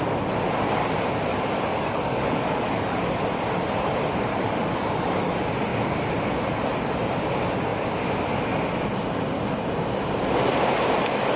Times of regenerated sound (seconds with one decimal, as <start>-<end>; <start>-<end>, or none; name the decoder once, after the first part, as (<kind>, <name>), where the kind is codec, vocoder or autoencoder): 1.3-3.2 (codec, DAC); 4.3-5.3